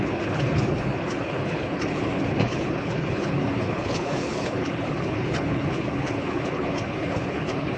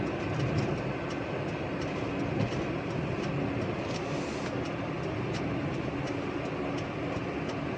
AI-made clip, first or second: first